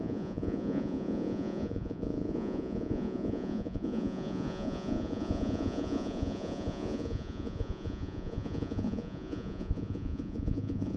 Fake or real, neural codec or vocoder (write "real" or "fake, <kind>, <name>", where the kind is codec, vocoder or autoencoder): fake, vocoder, Vocos